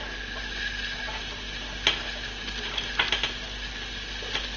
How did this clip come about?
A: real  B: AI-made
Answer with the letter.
A